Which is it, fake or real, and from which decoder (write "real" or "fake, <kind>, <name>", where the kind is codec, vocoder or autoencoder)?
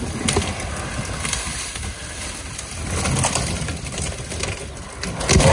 real